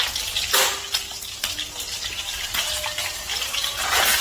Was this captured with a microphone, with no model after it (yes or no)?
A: yes